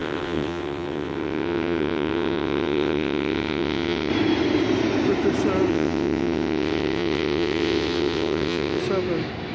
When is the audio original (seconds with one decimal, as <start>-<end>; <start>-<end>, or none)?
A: 4.1-5.7; 8.8-9.5